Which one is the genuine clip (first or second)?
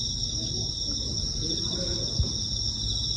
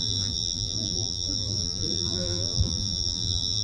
first